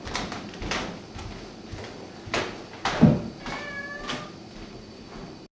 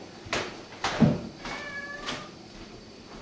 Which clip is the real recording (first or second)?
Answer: first